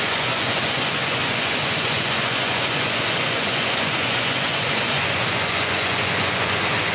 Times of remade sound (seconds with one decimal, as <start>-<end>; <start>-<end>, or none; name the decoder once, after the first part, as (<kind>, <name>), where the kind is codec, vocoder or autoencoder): 0.0-6.9 (vocoder, Vocos)